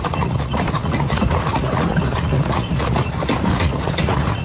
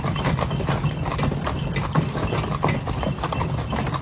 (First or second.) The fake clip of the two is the first